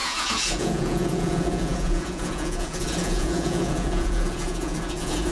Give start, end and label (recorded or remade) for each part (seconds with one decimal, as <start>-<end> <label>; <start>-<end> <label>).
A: 0.0-5.3 remade